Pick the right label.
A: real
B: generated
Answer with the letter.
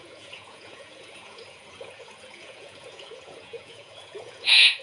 B